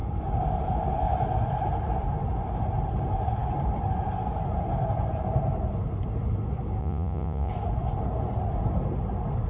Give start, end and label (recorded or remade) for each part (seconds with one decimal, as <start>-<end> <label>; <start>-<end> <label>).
0.0-6.8 recorded; 6.8-7.5 remade; 7.5-9.5 recorded